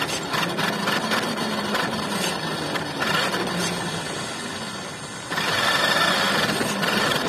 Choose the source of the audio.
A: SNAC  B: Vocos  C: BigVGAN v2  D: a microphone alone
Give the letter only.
D